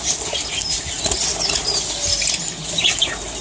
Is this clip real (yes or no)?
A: yes